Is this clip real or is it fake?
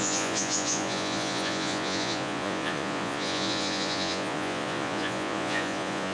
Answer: fake